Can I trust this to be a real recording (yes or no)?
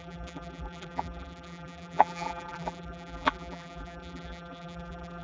no